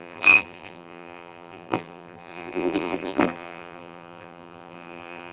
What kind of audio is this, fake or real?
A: fake